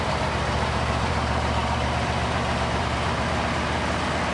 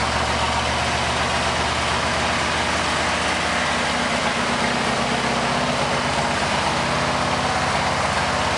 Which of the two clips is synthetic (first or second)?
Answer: first